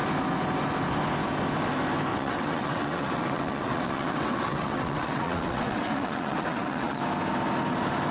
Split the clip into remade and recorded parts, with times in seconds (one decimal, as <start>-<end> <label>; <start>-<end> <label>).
0.0-2.1 recorded; 2.1-7.0 remade; 7.0-8.1 recorded